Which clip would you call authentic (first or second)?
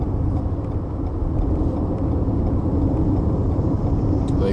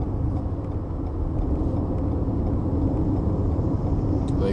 second